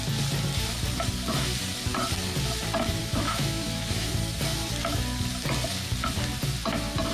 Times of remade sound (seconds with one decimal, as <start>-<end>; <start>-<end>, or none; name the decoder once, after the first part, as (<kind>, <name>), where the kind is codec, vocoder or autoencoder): 3.0-4.1 (autoencoder, DAC-VAE)